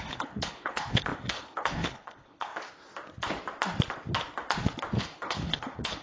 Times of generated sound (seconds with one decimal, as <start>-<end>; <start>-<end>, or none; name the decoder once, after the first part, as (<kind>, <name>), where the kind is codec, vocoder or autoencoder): 0.0-2.5 (codec, HILCodec); 5.0-6.0